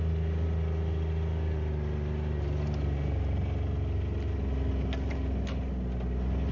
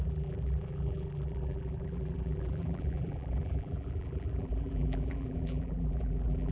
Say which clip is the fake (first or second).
second